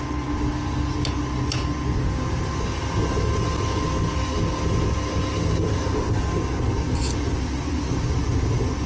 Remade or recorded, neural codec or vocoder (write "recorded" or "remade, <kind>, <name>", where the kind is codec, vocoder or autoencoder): recorded